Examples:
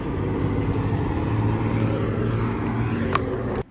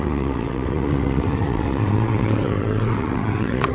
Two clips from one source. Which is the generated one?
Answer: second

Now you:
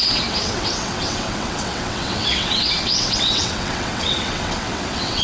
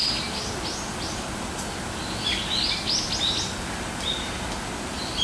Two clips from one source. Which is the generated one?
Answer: first